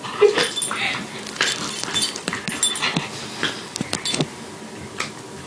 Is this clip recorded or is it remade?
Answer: recorded